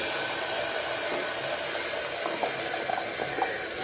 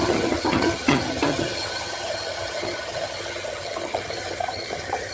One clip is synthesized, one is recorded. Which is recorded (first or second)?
first